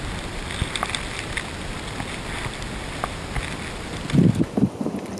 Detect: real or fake real